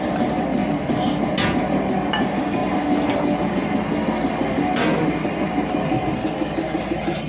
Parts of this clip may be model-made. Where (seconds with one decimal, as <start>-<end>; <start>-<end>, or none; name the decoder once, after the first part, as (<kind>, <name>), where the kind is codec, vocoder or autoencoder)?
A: none

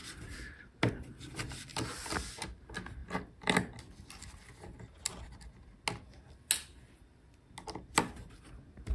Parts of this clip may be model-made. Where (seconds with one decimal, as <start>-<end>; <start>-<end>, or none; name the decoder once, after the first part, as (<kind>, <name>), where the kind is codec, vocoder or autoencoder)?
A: none

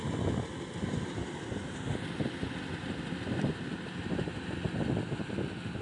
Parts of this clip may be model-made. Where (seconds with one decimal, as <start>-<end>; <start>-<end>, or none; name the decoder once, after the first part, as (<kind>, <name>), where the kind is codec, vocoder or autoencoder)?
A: none

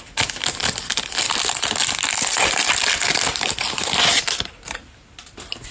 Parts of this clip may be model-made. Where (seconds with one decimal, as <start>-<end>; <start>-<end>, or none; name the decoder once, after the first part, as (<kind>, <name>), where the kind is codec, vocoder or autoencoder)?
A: none

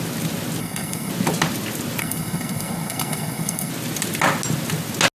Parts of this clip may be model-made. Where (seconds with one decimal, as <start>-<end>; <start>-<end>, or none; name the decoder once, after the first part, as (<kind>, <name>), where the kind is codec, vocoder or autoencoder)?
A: 0.6-1.1 (codec, SNAC); 2.0-3.7